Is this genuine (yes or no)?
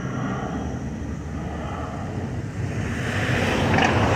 yes